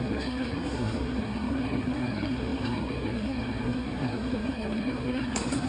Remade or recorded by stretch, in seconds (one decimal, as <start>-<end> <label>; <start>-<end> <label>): 0.0-5.7 remade